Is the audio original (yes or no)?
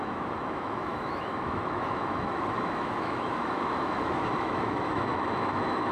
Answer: no